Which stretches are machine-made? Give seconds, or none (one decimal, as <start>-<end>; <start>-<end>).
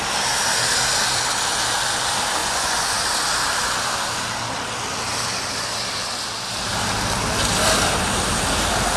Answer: 2.4-3.0